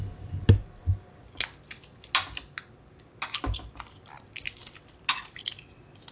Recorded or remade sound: recorded